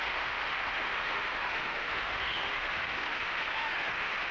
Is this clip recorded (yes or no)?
no